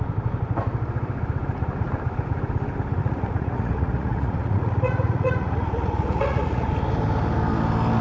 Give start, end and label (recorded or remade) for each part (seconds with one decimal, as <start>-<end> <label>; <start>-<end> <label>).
0.0-3.0 recorded; 3.0-6.7 remade; 6.7-8.0 recorded